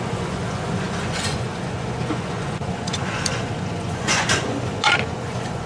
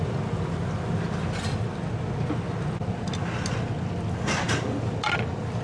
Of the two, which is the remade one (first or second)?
first